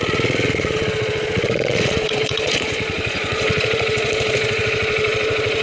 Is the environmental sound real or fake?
fake